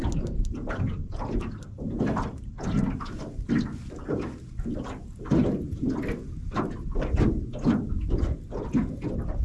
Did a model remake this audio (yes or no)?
no